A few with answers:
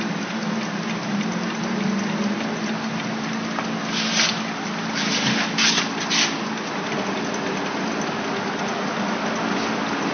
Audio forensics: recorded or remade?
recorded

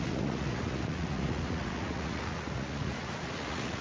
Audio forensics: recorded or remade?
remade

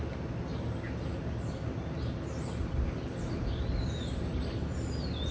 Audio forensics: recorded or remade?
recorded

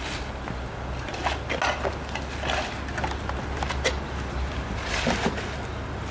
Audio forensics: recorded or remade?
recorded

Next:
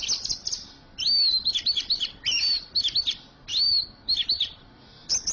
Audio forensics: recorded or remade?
recorded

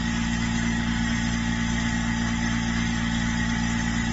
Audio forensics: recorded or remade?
recorded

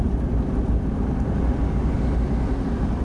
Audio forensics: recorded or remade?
recorded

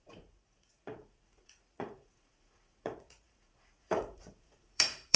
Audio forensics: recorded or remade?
remade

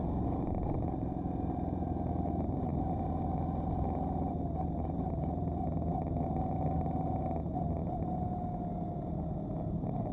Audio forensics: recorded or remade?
recorded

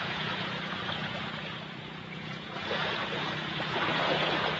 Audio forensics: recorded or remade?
remade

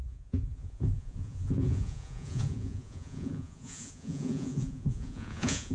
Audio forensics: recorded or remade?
remade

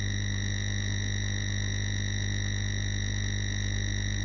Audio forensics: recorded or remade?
remade